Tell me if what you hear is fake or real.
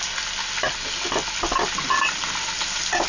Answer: real